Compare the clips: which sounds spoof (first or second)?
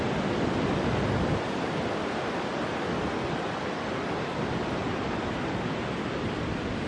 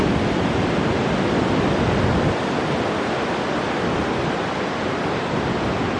first